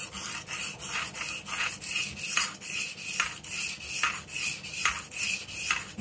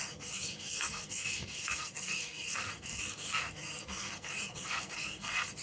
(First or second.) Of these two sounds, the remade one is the second